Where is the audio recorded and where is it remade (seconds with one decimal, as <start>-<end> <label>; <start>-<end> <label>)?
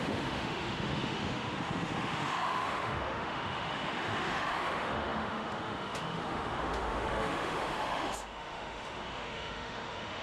0.0-10.2 remade